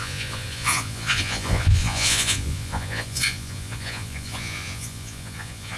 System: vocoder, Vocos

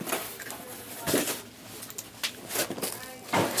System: none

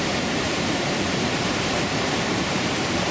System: vocoder, BigVGAN v2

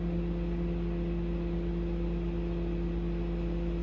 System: none